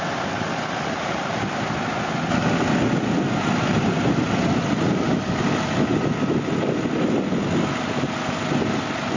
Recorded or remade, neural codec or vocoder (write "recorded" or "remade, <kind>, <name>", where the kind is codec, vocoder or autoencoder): recorded